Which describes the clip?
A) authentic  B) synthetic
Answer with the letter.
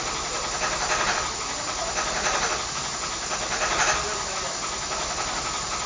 A